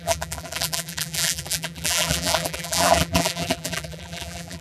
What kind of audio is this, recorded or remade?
remade